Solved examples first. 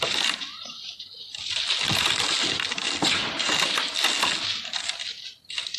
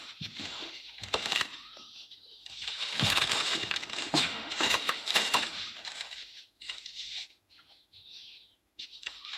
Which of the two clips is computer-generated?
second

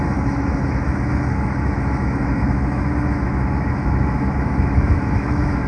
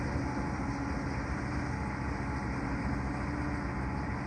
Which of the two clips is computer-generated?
first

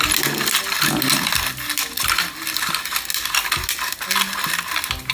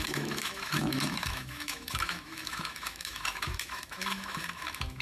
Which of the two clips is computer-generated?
second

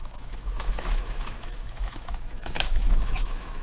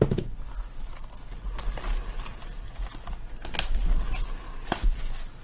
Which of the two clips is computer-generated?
first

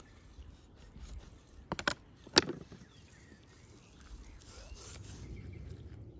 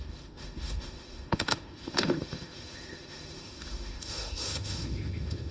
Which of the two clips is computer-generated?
second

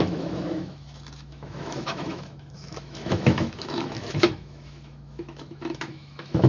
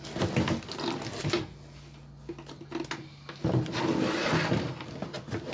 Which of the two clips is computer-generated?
first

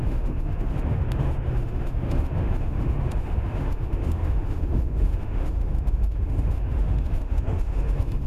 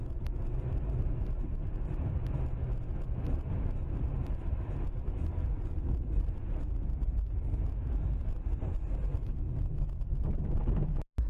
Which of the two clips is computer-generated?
first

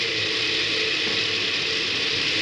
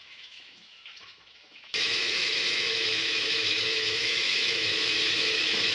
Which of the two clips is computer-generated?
second